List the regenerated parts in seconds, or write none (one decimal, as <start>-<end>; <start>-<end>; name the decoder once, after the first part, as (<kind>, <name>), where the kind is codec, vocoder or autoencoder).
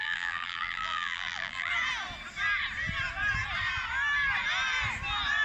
0.0-1.7 (vocoder, BigVGAN v2)